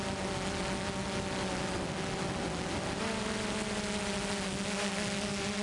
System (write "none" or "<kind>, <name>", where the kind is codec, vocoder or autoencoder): none